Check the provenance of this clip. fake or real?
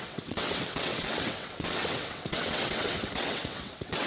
fake